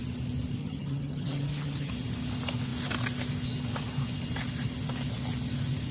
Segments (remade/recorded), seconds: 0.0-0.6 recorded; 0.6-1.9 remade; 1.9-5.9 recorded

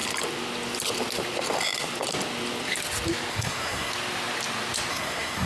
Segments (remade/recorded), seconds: 0.0-3.3 recorded; 3.3-3.9 remade; 3.9-4.9 recorded; 4.9-5.5 remade

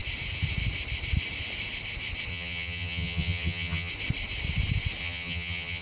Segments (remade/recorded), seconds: 0.0-2.3 recorded; 2.3-3.9 remade; 3.9-5.0 recorded; 5.0-5.8 remade

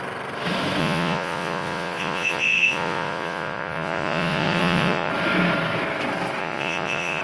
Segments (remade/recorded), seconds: 0.0-0.8 recorded; 0.8-5.1 remade; 5.1-6.4 recorded; 6.4-7.2 remade

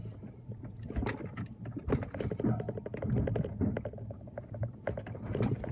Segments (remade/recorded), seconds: 0.0-0.4 remade; 0.4-3.7 recorded; 3.7-5.7 remade

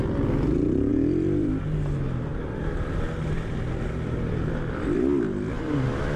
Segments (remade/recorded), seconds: 0.0-0.9 recorded; 0.9-1.6 remade; 1.6-2.3 recorded; 2.3-5.2 remade; 5.2-6.2 recorded

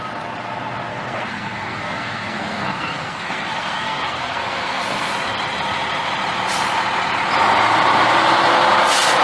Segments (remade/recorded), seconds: 0.0-0.9 recorded; 0.9-5.1 remade; 5.1-9.2 recorded

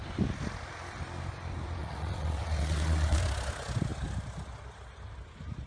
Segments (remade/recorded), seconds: 0.0-1.8 recorded; 1.8-3.2 remade; 3.2-5.7 recorded